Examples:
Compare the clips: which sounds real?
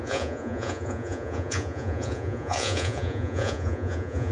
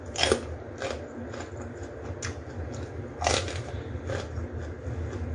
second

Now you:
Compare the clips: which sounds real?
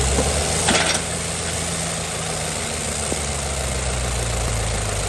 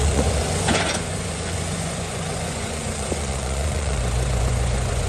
first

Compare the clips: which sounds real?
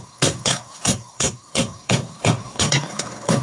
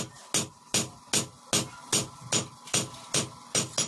second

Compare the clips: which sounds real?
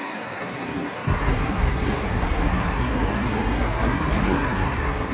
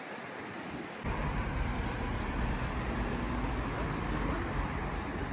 second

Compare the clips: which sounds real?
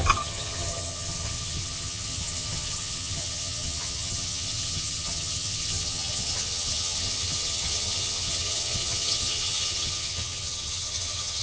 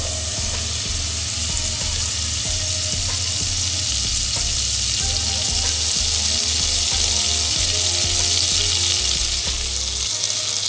second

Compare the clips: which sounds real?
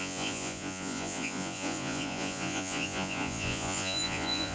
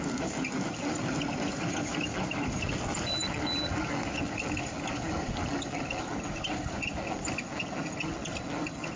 second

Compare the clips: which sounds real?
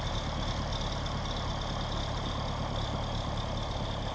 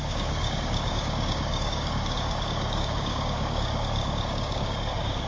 first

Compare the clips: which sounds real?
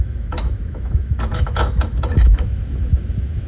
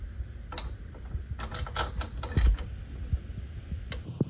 second